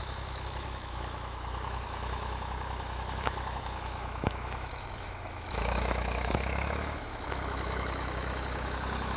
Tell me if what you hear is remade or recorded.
remade